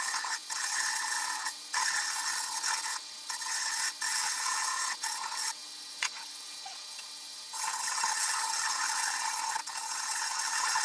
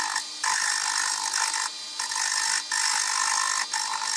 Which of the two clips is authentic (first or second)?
second